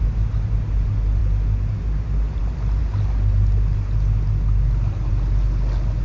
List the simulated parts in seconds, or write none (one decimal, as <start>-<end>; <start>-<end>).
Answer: none